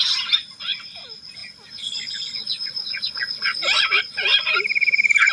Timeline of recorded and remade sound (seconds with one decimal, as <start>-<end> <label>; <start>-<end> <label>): 0.0-1.4 recorded; 1.4-4.0 remade; 4.0-5.3 recorded